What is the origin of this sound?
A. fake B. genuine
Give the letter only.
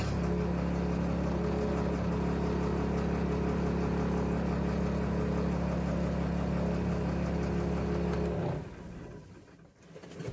B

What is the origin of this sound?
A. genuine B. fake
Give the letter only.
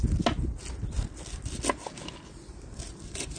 A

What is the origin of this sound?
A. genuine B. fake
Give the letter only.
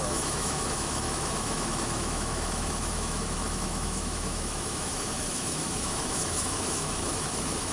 B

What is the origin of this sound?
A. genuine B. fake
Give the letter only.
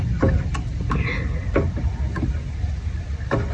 A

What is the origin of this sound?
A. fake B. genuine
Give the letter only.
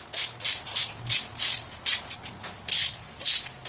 B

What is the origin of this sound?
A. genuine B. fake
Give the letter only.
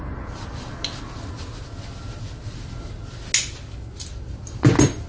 A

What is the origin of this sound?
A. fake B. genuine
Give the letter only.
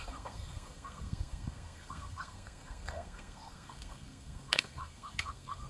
A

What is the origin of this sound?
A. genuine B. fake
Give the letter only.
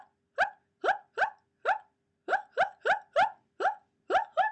A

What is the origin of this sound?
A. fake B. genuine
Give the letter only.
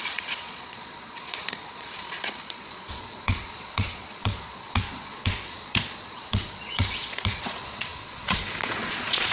A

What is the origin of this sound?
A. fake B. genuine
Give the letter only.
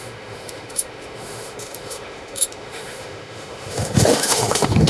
A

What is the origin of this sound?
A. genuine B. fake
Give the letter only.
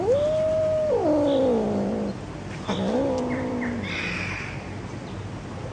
A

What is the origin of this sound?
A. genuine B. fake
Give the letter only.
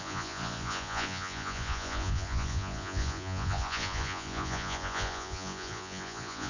B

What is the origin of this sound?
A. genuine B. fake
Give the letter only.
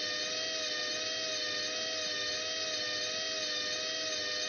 A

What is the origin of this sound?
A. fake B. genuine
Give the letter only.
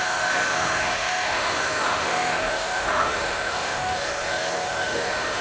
A